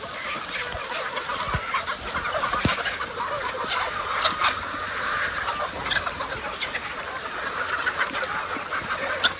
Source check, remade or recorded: recorded